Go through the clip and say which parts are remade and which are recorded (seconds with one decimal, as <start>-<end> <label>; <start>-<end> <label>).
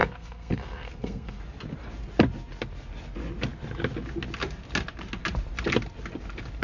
0.0-1.4 remade; 1.4-6.6 recorded